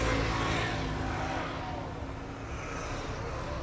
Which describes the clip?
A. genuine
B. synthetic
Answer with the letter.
A